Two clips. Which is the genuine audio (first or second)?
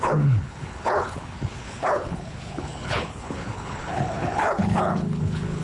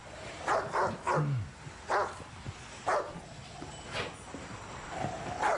second